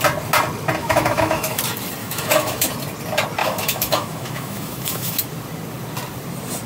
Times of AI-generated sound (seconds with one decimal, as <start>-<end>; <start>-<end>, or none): 0.8-1.6; 2.0-2.7; 3.4-5.2